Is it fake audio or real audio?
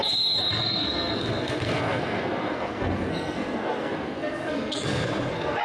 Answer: fake